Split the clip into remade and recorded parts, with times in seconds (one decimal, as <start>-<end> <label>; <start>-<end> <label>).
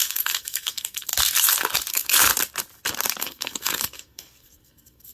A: 0.0-1.1 remade; 1.1-1.9 recorded; 1.9-2.3 remade; 2.3-3.2 recorded; 3.2-5.1 remade